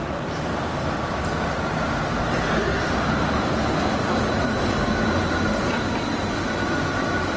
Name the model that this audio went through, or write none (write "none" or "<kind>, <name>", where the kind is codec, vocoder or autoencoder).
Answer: none